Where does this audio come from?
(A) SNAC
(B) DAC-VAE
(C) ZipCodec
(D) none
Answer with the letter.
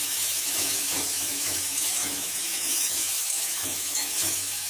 B